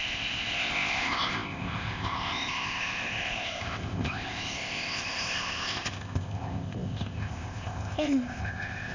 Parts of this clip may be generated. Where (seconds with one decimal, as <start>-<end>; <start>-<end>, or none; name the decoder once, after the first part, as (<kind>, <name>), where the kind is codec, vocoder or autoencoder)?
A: 0.0-8.9 (codec, ZipCodec)